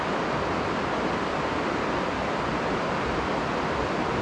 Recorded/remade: recorded